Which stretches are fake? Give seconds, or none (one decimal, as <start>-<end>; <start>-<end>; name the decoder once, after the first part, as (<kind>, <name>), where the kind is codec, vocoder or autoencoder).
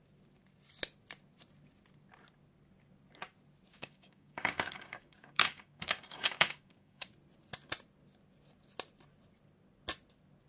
3.7-7.1 (codec, DAC)